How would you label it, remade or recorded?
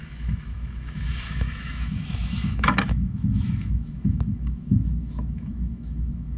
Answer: remade